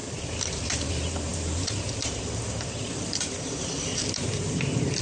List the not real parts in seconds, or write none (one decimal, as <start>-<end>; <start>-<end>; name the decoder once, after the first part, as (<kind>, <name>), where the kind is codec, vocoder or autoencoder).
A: 0.0-0.9 (vocoder, BigVGAN v2); 1.3-4.2